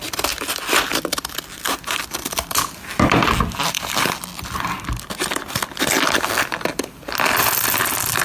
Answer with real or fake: real